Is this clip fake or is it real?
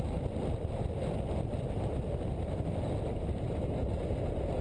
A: real